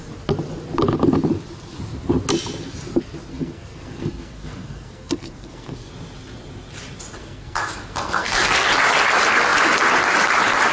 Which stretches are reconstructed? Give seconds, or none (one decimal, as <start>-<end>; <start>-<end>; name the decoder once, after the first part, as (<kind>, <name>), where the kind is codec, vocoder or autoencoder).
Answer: 3.3-5.9 (codec, SNAC); 7.2-8.7